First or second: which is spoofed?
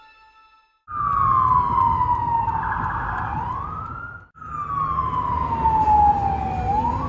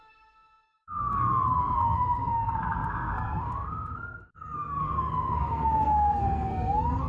second